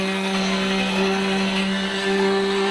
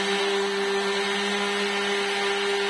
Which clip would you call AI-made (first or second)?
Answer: first